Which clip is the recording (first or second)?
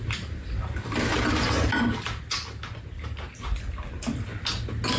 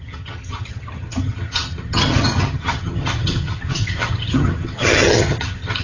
first